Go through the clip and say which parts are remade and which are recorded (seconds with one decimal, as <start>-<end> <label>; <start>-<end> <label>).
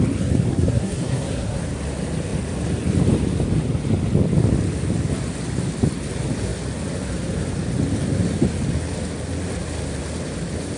0.0-0.5 recorded; 0.5-1.6 remade; 1.6-10.8 recorded